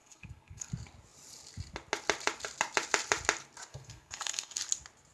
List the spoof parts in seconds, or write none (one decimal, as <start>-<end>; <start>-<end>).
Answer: 0.0-0.7; 3.7-4.6